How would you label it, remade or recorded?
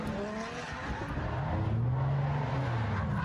recorded